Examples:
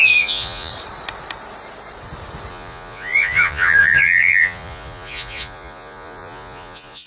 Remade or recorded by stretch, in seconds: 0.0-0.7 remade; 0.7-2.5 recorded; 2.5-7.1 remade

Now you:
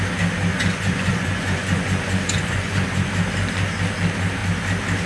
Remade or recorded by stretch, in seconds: 0.0-0.5 recorded; 0.5-3.1 remade; 3.1-5.1 recorded